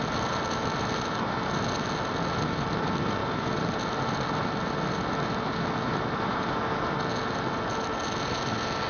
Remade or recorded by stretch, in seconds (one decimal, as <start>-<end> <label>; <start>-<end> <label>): 0.0-8.9 recorded